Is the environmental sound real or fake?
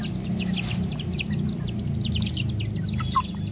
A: real